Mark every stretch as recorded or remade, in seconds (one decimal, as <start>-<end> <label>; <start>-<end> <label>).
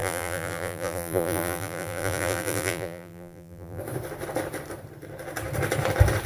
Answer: 0.0-3.8 remade; 3.8-6.3 recorded